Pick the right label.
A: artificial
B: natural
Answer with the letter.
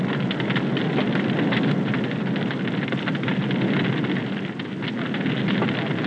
B